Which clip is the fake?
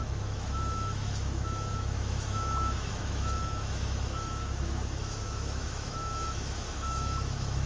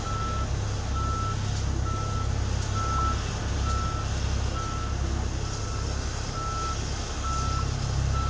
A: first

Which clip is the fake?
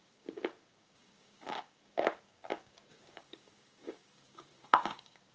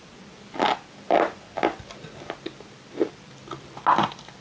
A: first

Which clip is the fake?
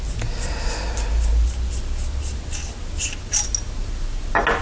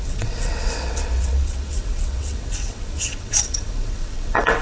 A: second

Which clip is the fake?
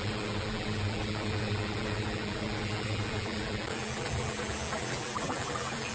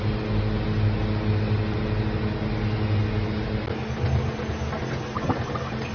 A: first